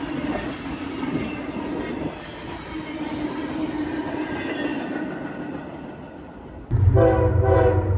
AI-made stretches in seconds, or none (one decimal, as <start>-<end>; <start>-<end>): none